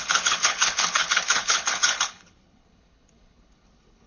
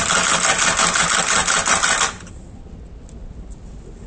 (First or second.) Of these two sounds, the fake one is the first